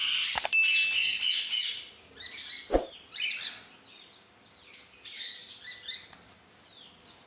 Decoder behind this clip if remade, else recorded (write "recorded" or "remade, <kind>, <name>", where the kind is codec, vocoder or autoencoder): recorded